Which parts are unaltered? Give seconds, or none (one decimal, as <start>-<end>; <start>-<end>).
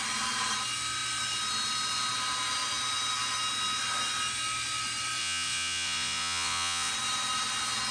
0.0-5.2; 6.9-7.9